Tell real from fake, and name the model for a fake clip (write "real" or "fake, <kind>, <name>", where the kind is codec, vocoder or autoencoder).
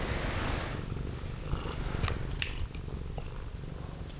real